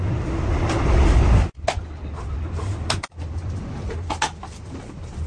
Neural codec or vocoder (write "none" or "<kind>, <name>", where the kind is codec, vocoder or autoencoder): none